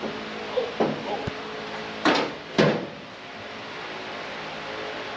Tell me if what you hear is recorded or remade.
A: recorded